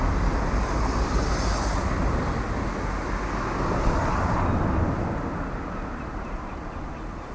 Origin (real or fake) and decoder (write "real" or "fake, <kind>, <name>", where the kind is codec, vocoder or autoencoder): real